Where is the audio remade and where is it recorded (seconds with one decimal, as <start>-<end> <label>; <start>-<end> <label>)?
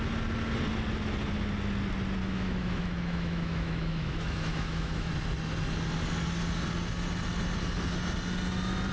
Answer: 0.0-2.2 recorded; 2.2-5.1 remade; 5.1-8.9 recorded